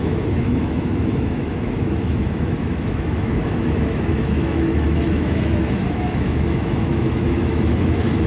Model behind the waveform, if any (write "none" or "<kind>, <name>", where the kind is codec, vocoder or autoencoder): autoencoder, DAC-VAE